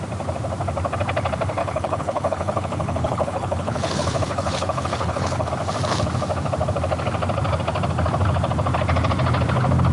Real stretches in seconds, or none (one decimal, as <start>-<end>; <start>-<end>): 0.0-1.6; 5.5-9.9